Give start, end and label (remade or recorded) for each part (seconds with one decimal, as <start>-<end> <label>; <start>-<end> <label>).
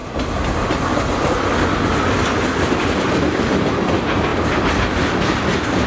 0.0-5.9 recorded